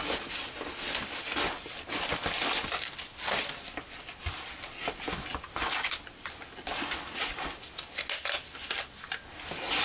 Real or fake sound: real